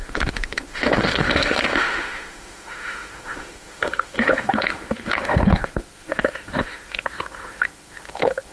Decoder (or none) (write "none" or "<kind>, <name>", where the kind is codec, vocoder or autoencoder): autoencoder, DAC-VAE